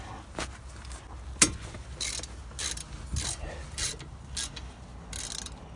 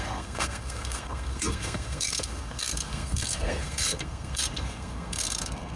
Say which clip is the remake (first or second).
second